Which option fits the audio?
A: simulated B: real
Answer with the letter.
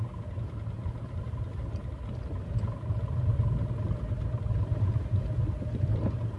B